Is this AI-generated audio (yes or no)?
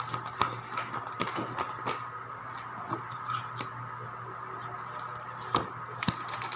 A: no